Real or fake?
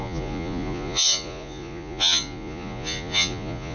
fake